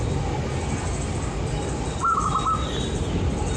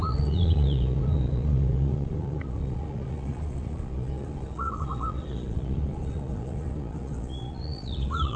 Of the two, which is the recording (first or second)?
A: first